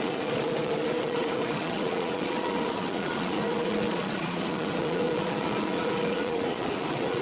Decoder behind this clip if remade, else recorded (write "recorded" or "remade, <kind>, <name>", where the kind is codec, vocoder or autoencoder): remade, vocoder, Vocos